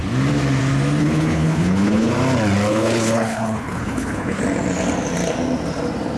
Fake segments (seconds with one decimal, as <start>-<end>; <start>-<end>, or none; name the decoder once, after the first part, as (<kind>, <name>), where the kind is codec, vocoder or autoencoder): 1.0-2.1 (codec, HILCodec); 2.7-4.4